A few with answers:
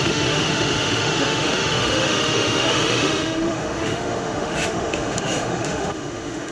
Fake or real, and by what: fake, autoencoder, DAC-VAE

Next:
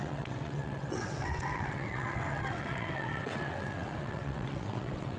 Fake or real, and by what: fake, vocoder, WaveNeXt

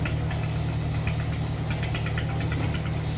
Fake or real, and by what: real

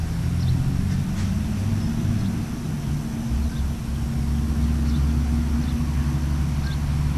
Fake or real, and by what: real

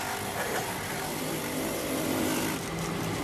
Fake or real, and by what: real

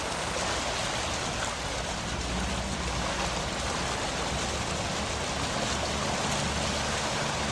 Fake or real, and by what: real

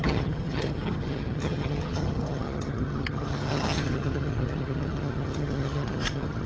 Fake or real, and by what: fake, vocoder, HiFi-GAN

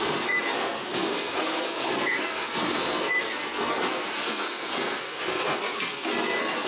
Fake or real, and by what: fake, codec, SNAC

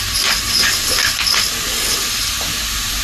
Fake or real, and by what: real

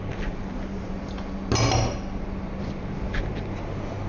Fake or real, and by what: real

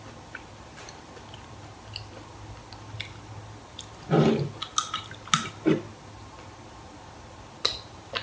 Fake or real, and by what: real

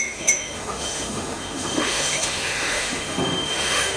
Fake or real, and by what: fake, autoencoder, DAC-VAE